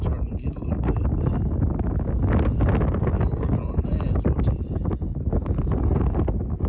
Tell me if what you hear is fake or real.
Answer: real